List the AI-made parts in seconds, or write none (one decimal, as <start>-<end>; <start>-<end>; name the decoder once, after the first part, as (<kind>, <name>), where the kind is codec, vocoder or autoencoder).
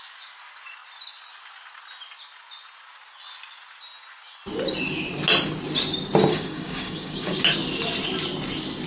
6.3-7.4 (codec, DAC)